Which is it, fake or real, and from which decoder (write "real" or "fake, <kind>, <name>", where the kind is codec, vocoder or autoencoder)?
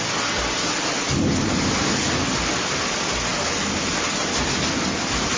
real